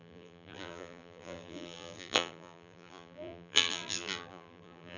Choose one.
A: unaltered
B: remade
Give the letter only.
B